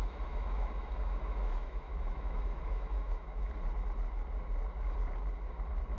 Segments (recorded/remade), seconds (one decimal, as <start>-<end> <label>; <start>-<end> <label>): 0.0-3.5 remade; 3.5-6.0 recorded